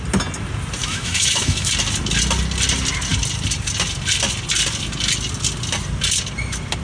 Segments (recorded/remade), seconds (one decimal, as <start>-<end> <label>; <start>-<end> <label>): 0.0-0.8 recorded; 0.8-1.7 remade; 1.7-6.8 recorded